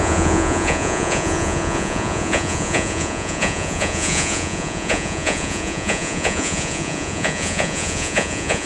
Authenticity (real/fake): fake